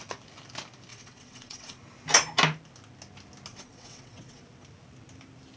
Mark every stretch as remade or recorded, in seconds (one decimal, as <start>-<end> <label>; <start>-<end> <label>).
0.0-0.9 recorded; 0.9-1.8 remade; 1.8-3.5 recorded; 3.5-4.4 remade; 4.4-5.6 recorded